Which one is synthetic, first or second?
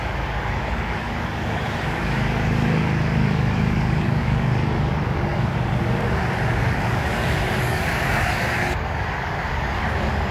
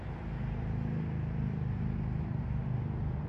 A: first